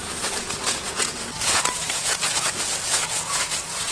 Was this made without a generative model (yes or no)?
no